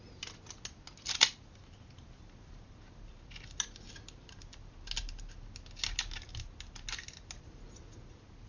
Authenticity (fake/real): real